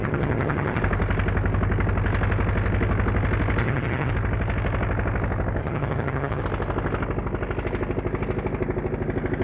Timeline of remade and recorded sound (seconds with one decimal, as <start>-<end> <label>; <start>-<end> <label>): 0.0-0.8 remade; 0.8-3.6 recorded; 3.6-4.1 remade; 4.1-5.6 recorded; 5.6-6.4 remade; 6.4-9.4 recorded